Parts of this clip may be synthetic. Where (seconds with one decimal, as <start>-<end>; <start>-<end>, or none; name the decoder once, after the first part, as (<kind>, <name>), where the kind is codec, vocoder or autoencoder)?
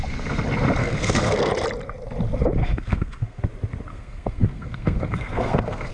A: 0.8-1.5 (codec, SNAC); 2.6-3.4; 3.9-5.9